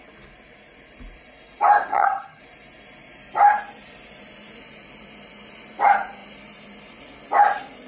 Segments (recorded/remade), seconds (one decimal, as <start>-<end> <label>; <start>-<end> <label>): 0.0-1.9 recorded; 1.9-2.4 remade; 2.4-7.9 recorded